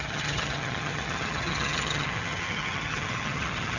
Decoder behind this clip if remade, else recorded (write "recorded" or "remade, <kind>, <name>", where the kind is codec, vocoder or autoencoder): remade, vocoder, HiFi-GAN